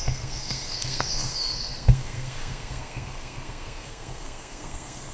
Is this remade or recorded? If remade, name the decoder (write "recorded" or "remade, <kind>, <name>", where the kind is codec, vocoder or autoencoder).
remade, codec, SNAC